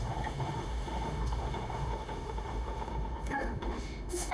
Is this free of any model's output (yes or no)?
no